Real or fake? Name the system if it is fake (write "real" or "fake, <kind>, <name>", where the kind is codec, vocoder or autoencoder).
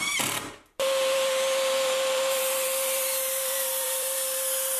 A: fake, vocoder, BigVGAN v2